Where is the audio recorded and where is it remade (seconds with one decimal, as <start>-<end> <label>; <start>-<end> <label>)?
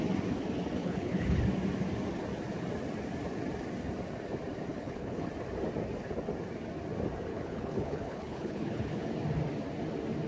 0.0-0.8 recorded; 0.8-1.4 remade; 1.4-4.7 recorded; 4.7-5.3 remade; 5.3-7.3 recorded; 7.3-9.1 remade; 9.1-10.3 recorded